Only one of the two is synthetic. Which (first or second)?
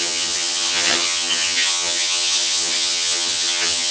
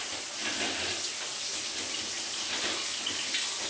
first